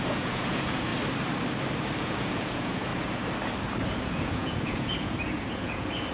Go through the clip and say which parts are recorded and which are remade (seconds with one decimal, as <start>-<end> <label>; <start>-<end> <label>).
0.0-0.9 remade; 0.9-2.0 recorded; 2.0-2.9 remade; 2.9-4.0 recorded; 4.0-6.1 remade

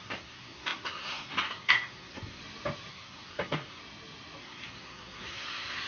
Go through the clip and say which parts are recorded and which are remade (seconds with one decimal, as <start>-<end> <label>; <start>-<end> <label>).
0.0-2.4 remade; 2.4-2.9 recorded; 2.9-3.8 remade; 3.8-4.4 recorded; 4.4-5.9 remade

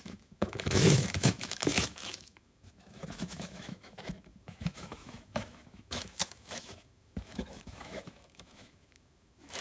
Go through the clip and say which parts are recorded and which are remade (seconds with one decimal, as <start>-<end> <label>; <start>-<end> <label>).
0.0-9.6 remade

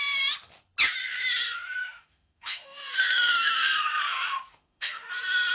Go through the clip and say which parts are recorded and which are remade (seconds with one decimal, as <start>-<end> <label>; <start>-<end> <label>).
0.0-1.8 recorded; 1.8-5.1 remade; 5.1-5.5 recorded

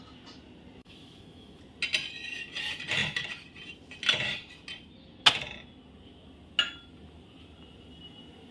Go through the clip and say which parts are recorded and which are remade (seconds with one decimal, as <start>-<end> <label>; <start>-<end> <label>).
0.0-0.8 recorded; 0.8-1.6 remade; 1.6-8.5 recorded

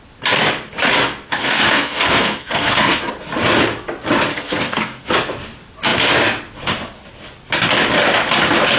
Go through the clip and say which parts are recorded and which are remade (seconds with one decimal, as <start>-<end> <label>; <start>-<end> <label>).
0.0-1.4 recorded; 1.4-3.1 remade; 3.1-4.3 recorded; 4.3-5.1 remade; 5.1-8.8 recorded